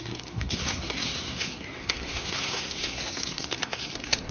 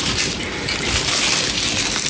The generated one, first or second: first